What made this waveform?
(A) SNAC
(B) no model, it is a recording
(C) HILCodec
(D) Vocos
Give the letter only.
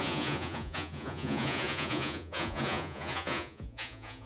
D